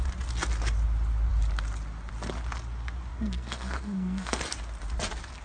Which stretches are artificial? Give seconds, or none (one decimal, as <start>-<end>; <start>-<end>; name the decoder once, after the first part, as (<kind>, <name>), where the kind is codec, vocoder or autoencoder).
3.1-4.4 (codec, SNAC)